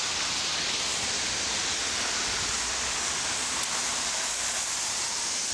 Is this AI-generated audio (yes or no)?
no